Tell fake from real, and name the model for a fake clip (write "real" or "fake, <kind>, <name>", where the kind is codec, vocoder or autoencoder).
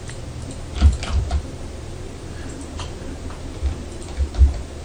fake, vocoder, BigVGAN v2